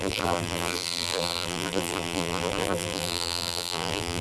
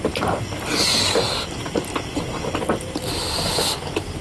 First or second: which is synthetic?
first